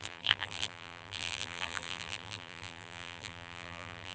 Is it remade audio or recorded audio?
remade